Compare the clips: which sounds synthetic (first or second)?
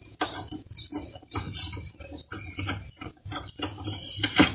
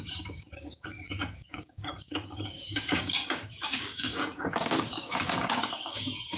second